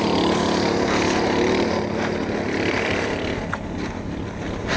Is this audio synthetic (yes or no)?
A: no